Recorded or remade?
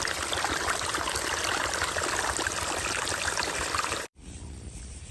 remade